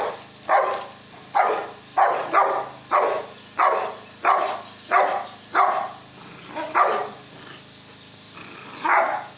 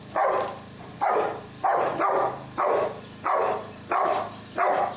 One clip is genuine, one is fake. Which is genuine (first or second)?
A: first